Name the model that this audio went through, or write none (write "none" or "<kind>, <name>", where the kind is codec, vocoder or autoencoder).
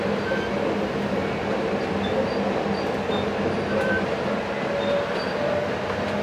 none